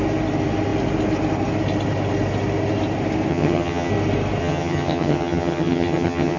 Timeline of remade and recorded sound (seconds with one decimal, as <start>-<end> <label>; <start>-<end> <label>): 0.0-3.3 recorded; 3.3-3.9 remade; 3.9-4.4 recorded; 4.4-6.4 remade